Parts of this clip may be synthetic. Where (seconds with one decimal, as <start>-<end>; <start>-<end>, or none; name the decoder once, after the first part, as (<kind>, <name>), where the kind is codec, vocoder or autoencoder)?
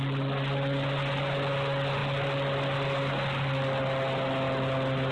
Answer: none